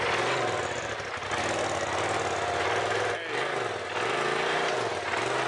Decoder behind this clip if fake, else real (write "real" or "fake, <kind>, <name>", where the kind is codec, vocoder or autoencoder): real